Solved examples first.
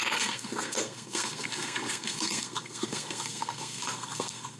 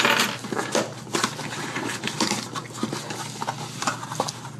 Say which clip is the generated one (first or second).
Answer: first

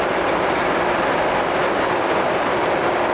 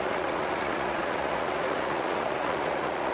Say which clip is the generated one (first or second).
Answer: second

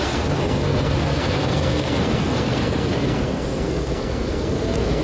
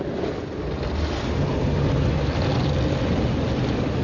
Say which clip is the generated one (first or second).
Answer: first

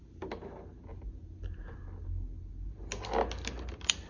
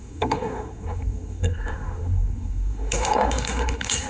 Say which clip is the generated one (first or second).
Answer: second